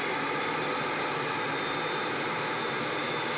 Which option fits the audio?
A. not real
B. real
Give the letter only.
B